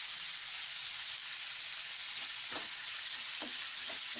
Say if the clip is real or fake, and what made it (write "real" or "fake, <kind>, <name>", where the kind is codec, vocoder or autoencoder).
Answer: real